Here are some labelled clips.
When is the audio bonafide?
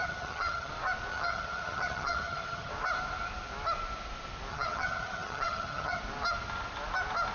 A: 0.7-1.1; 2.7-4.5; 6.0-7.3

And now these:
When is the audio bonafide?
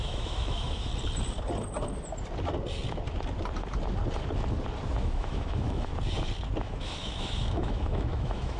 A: 0.9-5.0; 5.9-6.6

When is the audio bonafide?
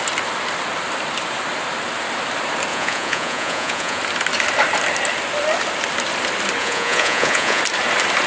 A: 0.0-2.7; 4.0-6.6; 7.6-8.3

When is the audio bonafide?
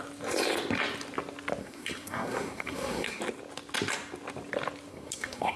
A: 0.0-1.6; 3.2-4.9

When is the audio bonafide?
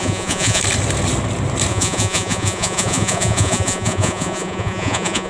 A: 0.6-1.7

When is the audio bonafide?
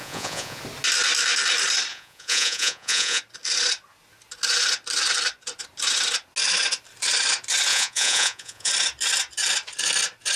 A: 0.6-1.9; 3.2-7.7; 8.7-10.4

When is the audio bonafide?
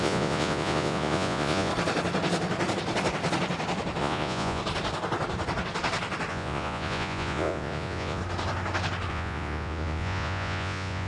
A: 1.7-4.0; 4.6-6.3; 8.2-9.1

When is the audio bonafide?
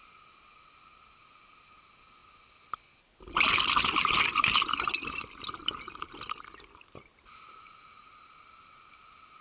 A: 0.0-9.4